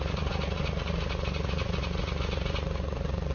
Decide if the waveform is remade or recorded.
remade